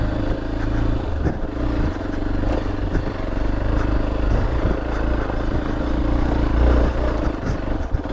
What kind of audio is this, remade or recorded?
recorded